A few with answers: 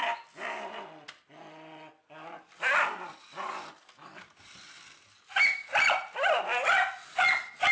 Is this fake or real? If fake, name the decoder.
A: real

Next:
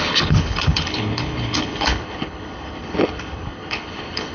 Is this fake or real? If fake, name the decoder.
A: fake, codec, HILCodec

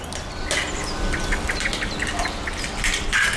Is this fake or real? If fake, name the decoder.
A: real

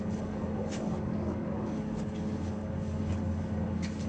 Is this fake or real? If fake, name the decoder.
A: fake, codec, DAC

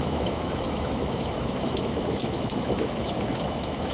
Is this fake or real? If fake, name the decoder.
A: fake, autoencoder, DAC-VAE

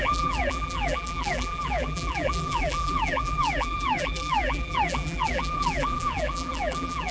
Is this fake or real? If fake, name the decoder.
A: fake, vocoder, BigVGAN v2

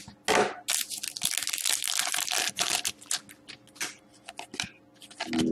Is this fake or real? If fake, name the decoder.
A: real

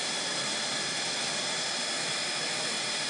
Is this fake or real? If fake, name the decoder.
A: real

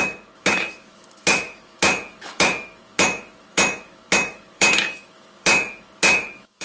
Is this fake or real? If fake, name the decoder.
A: fake, autoencoder, DAC-VAE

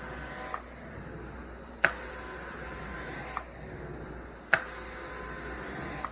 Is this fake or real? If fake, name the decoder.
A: real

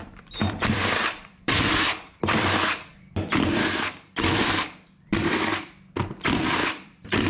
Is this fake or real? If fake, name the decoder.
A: fake, vocoder, BigVGAN v2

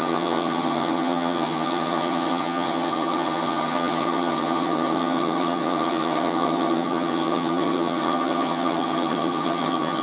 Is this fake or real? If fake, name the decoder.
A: fake, vocoder, HiFi-GAN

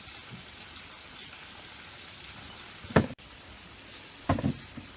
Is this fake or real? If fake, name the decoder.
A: real